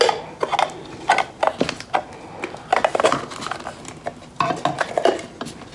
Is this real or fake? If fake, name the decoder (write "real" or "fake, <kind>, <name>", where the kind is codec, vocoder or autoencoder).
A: real